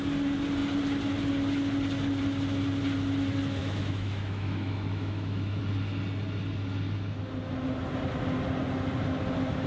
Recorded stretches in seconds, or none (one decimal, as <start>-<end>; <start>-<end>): 0.0-3.6; 5.6-9.7